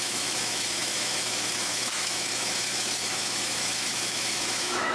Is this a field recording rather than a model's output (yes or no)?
no